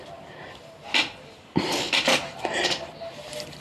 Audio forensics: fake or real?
real